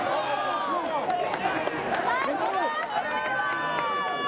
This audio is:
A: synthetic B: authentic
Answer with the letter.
B